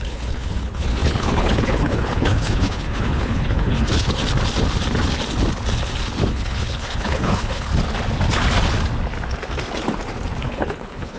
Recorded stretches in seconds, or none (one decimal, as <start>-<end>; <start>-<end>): 4.2-6.3; 7.7-10.4